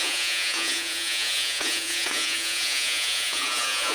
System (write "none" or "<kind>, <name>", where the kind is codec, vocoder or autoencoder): vocoder, Vocos